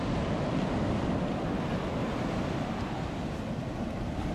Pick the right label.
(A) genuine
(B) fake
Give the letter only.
A